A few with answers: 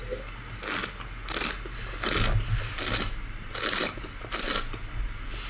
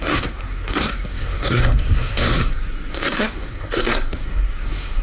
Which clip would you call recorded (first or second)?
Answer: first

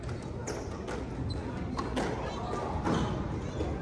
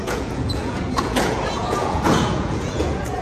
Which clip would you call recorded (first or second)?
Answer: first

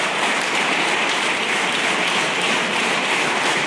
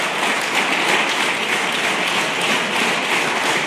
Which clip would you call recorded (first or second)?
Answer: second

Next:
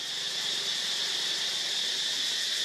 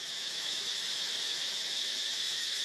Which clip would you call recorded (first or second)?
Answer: first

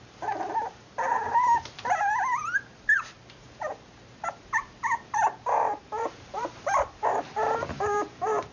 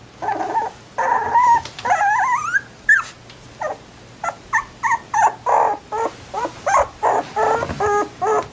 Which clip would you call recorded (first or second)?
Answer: second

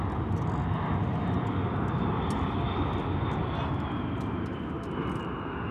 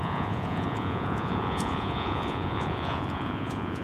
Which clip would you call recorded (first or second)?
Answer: first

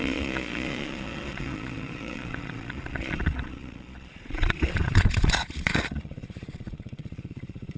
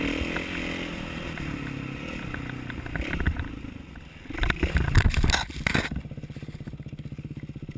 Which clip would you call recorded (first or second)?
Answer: second